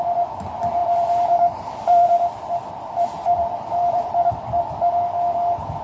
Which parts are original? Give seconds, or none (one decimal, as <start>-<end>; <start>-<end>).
0.0-0.8; 4.3-5.8